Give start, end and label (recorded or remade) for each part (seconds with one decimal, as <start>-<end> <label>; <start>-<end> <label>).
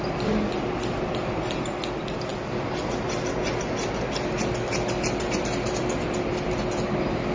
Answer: 0.0-7.3 recorded